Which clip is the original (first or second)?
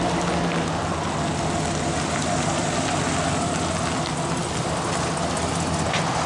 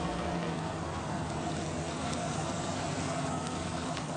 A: first